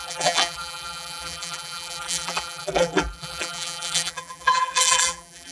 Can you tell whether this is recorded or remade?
remade